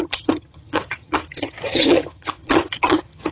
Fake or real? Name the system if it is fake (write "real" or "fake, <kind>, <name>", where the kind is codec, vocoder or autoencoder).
fake, vocoder, HiFi-GAN